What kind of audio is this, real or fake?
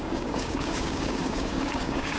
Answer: fake